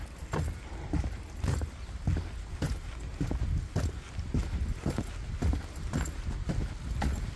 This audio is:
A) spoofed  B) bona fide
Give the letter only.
B